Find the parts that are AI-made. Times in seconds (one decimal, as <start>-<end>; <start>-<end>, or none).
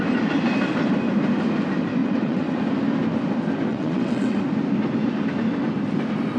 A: 2.0-2.6; 3.7-4.4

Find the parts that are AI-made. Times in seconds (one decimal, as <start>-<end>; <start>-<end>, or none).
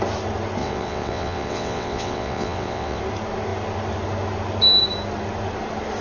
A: 0.6-3.0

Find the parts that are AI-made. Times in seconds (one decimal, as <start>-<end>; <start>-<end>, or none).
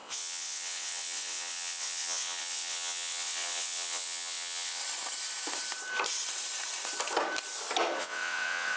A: 0.0-4.8; 8.0-8.8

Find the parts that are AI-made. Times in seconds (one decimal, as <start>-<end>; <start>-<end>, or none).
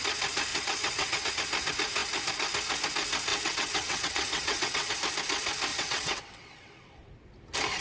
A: 0.5-1.3; 3.3-4.9; 5.7-7.1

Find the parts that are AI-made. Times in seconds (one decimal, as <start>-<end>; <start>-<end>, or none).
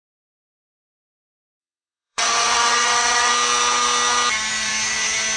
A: 1.6-3.3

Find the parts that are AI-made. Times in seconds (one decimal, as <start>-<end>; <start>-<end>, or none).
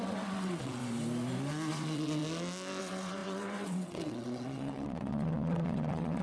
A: 0.0-0.8; 1.7-2.2; 2.8-6.2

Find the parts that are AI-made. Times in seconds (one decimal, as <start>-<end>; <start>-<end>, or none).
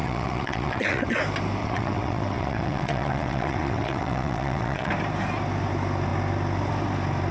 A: 0.0-1.2; 1.6-4.9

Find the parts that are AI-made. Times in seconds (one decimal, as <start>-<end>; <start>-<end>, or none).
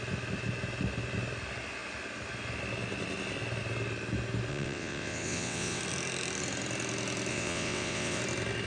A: 4.5-5.8; 7.3-8.2